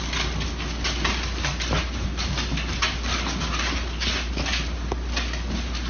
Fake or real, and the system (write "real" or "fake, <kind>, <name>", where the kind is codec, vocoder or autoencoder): real